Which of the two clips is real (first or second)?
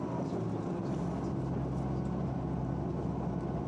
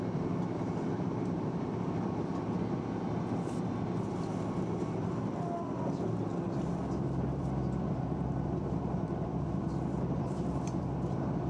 first